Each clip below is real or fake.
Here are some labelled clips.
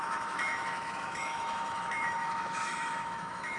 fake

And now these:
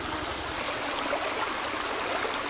real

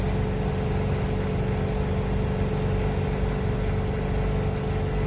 real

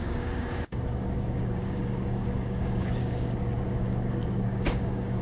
fake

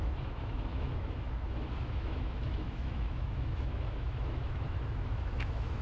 fake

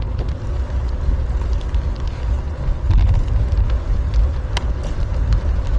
real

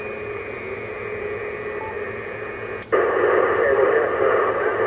real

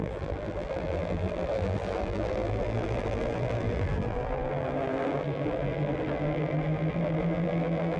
fake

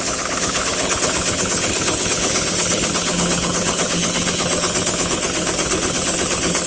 fake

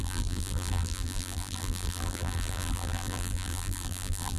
fake